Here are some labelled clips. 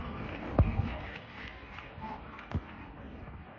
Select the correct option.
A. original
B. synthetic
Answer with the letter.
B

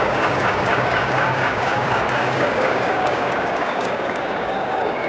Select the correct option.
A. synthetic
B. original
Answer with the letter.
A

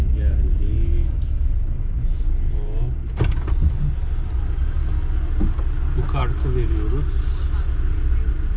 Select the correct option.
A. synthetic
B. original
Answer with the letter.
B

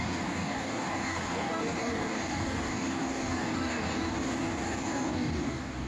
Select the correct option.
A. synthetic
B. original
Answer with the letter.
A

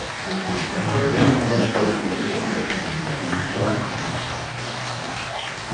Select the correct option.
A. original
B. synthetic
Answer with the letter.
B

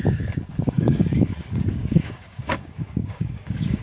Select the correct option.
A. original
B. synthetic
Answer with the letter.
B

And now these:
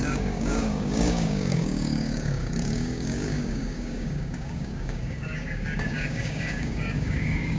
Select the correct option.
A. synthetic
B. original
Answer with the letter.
A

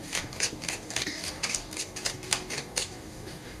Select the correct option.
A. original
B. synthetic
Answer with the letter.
B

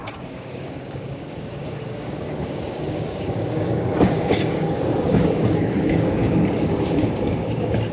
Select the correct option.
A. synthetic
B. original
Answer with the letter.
A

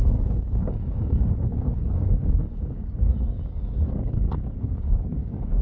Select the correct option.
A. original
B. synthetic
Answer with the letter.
B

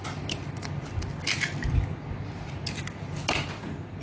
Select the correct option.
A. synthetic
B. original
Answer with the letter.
B